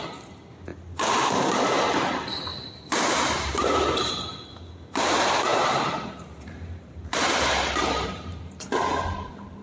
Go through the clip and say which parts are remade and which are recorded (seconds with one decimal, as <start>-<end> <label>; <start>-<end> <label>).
0.0-2.5 recorded; 2.5-4.1 remade; 4.1-5.5 recorded; 5.5-8.4 remade; 8.4-9.6 recorded